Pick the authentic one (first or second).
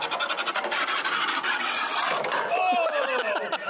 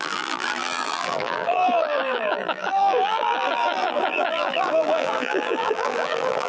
first